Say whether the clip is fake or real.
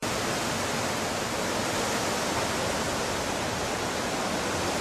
real